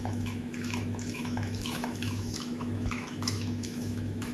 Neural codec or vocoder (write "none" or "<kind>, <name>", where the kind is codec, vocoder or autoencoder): autoencoder, DAC-VAE